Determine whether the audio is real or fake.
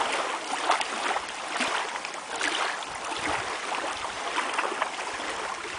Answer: real